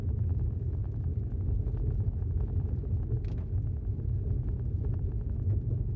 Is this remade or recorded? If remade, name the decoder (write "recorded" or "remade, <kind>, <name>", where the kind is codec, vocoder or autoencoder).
recorded